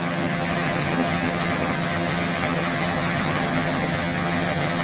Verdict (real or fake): fake